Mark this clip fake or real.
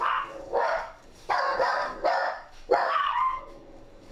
fake